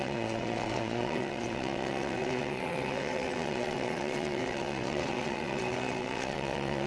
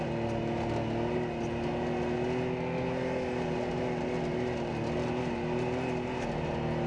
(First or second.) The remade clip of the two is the first